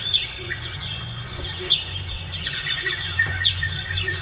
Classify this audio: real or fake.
fake